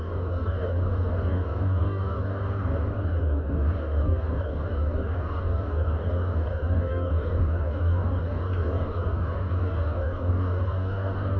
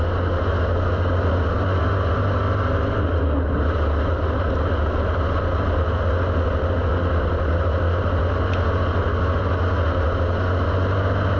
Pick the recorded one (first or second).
second